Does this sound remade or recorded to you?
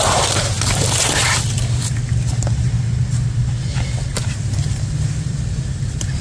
recorded